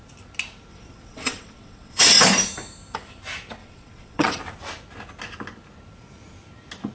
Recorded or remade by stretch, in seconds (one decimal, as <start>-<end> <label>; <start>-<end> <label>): 0.0-0.7 recorded; 0.7-2.2 remade; 2.2-3.6 recorded; 3.6-4.4 remade; 4.4-6.9 recorded